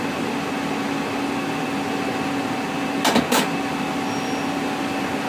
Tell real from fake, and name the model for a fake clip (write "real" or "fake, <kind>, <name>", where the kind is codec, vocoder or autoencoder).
real